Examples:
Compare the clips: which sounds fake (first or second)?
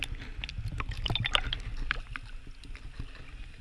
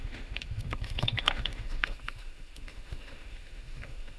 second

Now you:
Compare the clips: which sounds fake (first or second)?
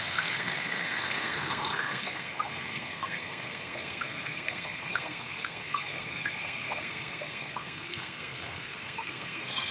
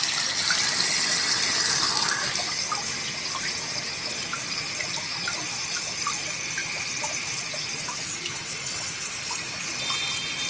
first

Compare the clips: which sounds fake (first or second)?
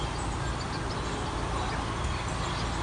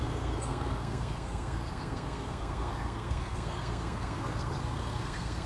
second